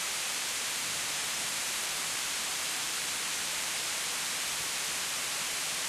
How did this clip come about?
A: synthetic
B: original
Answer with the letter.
A